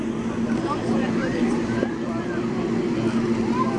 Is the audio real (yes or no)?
yes